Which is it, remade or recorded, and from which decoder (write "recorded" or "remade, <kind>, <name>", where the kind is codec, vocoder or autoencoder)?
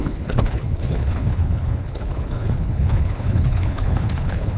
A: remade, codec, HILCodec